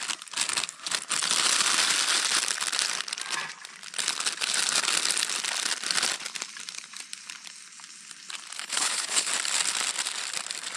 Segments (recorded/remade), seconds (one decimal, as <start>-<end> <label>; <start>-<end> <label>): 0.0-8.6 recorded; 8.6-9.3 remade; 9.3-10.8 recorded